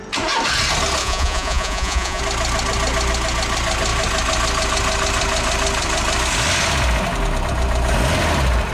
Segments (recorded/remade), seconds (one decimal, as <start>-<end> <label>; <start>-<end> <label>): 0.0-1.0 recorded; 1.0-2.2 remade; 2.2-8.7 recorded